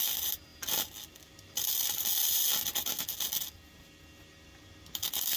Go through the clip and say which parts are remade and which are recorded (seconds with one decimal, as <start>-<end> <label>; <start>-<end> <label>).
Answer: 0.0-5.4 recorded